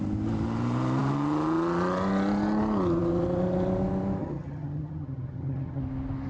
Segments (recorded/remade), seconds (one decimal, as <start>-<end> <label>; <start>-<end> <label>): 0.0-4.2 recorded; 4.2-5.8 remade; 5.8-6.3 recorded